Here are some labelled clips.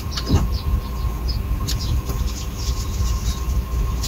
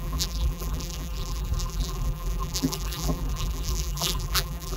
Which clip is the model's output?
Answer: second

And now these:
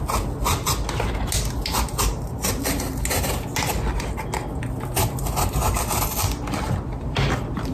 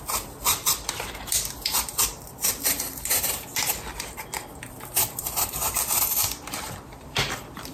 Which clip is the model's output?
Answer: second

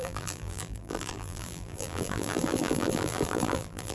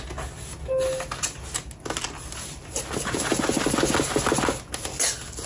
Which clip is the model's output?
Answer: first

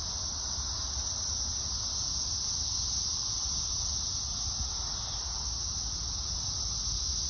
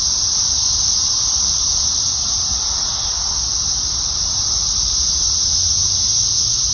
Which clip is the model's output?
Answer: second